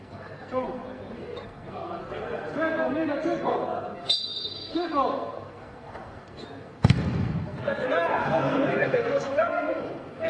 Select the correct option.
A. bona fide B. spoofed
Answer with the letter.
B